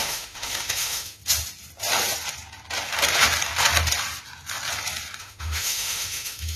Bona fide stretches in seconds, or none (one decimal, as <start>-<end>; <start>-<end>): 1.2-5.2